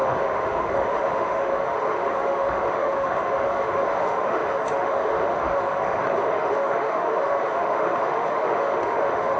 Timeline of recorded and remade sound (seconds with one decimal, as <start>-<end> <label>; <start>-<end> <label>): 0.0-9.4 remade